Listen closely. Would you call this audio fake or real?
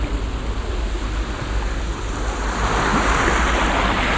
real